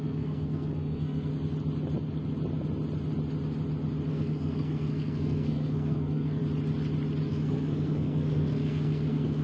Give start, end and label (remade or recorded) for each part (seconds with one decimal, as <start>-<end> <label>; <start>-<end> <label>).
0.0-1.3 remade; 1.3-4.1 recorded; 4.1-6.4 remade; 6.4-7.3 recorded; 7.3-9.4 remade